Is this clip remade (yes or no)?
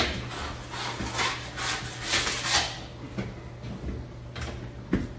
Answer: no